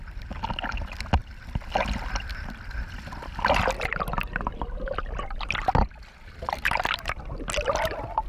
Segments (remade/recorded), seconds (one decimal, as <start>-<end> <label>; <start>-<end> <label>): 0.0-8.3 recorded